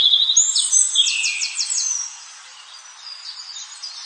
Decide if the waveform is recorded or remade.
recorded